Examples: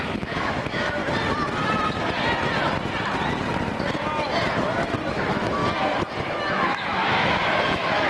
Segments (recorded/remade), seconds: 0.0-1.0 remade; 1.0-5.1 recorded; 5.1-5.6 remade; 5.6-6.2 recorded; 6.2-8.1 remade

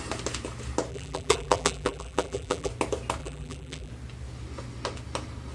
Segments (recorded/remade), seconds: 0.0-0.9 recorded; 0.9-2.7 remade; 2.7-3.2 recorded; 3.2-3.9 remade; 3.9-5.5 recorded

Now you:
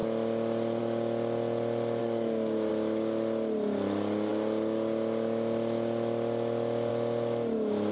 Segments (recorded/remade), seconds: 0.0-2.0 recorded; 2.0-2.7 remade; 2.7-7.9 recorded